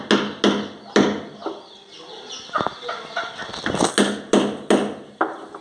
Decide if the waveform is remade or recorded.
recorded